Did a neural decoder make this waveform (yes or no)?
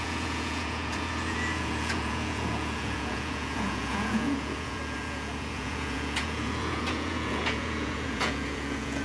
yes